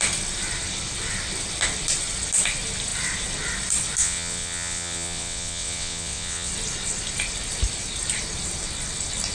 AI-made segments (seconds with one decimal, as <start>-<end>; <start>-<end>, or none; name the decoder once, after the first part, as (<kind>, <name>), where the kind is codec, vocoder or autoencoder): 4.0-6.5 (vocoder, WaveNeXt)